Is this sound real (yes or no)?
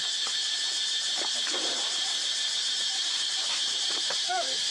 no